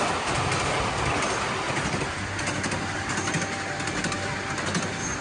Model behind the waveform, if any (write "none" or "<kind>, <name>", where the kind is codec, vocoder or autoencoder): none